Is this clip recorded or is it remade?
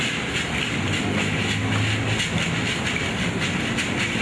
recorded